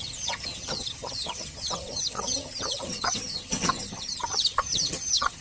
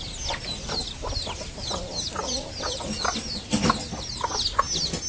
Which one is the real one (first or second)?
second